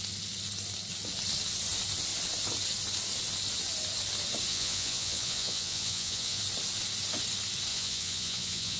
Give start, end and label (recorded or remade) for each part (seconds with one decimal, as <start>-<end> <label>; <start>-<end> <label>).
0.0-4.5 recorded; 4.5-6.4 remade; 6.4-7.7 recorded; 7.7-8.8 remade

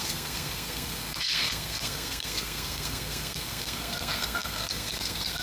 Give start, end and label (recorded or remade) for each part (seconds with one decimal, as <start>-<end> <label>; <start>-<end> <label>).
0.0-5.4 remade